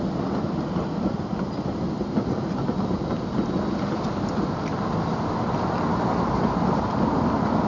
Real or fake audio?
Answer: real